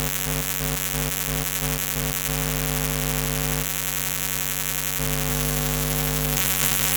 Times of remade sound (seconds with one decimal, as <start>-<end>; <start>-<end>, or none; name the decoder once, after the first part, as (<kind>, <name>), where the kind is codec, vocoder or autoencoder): 5.3-7.0 (autoencoder, DAC-VAE)